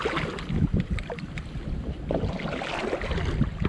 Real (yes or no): yes